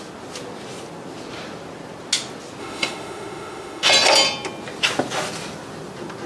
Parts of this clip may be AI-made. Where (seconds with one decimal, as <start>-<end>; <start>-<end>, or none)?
2.6-3.9

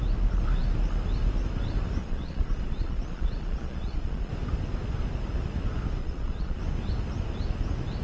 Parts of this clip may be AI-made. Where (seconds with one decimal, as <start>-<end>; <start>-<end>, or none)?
2.0-4.3; 6.0-6.6

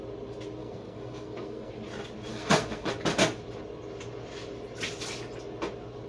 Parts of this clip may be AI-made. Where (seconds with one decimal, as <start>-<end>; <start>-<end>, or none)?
0.6-1.7; 2.3-2.9

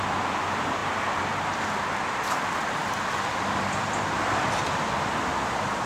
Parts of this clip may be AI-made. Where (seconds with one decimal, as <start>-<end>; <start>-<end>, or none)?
none